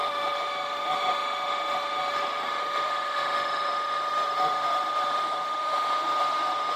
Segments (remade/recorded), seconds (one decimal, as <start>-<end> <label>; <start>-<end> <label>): 0.0-6.8 remade